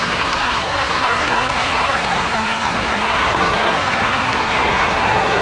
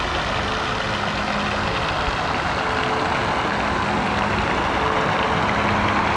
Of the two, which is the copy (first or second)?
first